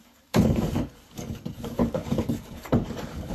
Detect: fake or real fake